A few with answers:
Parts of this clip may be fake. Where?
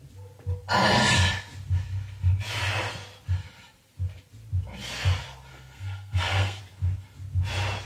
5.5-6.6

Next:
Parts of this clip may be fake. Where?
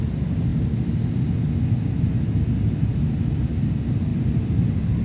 none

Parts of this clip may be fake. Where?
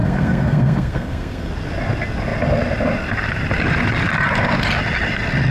0.0-1.5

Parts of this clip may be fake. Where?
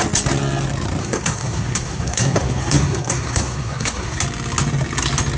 1.0-4.2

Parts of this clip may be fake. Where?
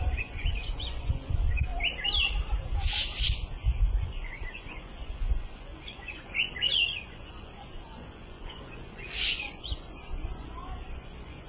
0.0-1.7; 3.2-11.5